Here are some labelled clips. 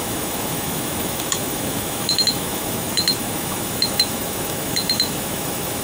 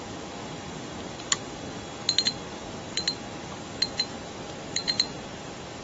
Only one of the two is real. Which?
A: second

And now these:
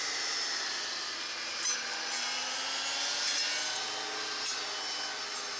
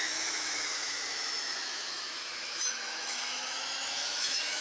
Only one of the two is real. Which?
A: first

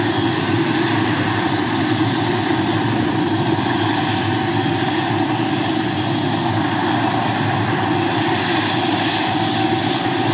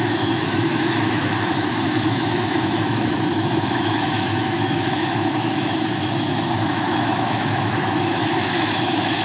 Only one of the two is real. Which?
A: first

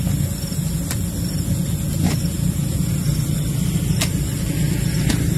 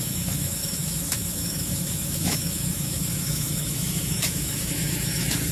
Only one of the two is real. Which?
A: first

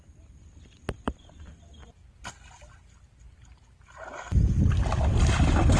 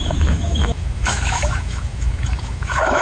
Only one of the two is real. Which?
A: first